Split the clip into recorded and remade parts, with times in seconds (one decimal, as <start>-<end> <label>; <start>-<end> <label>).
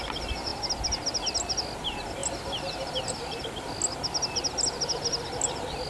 0.0-5.9 recorded